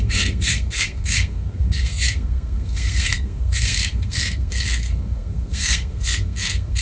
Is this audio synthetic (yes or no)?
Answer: yes